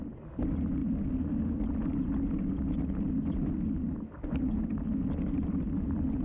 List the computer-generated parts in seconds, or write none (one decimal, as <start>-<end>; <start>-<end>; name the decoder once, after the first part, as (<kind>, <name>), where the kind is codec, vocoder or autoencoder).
none